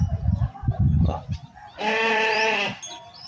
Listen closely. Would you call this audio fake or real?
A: real